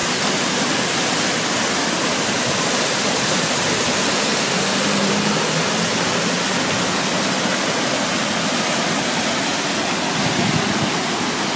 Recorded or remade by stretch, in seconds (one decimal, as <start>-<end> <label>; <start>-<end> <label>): 0.0-11.6 recorded

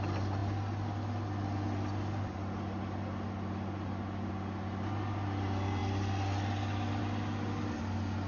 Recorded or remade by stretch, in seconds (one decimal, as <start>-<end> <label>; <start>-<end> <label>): 0.0-8.3 recorded